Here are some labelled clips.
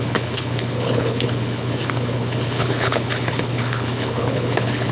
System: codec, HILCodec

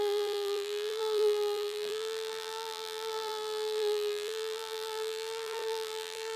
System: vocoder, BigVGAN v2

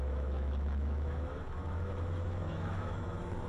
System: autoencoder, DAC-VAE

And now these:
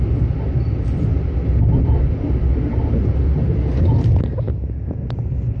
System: none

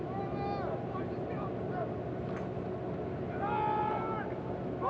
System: none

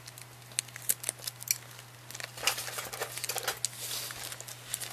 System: none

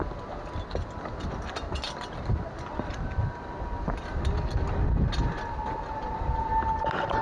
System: none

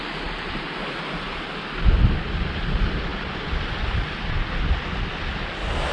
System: none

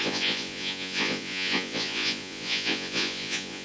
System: vocoder, Vocos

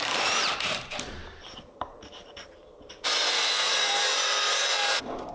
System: vocoder, BigVGAN v2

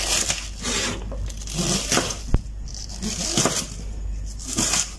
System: vocoder, BigVGAN v2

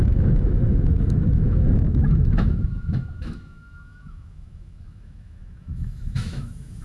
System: autoencoder, DAC-VAE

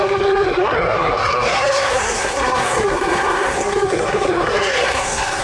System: codec, SNAC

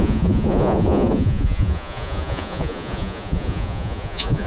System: vocoder, Vocos